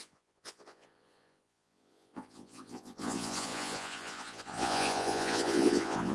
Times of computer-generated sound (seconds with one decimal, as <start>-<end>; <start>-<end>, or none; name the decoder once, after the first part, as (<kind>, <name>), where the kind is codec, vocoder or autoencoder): 0.0-6.1 (vocoder, Vocos)